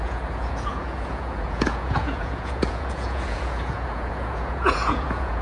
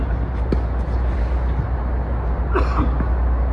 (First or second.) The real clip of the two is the second